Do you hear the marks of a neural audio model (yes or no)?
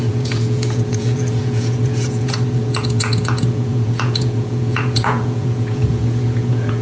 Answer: yes